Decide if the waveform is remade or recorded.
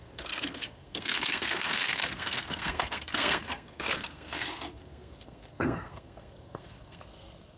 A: remade